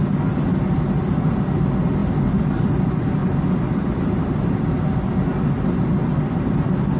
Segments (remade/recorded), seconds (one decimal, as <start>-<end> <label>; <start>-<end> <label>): 0.0-7.0 recorded